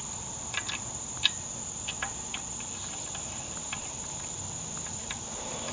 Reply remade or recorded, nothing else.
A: remade